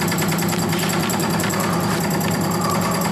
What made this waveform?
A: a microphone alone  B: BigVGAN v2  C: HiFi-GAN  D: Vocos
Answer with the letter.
B